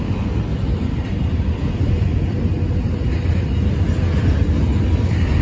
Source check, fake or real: real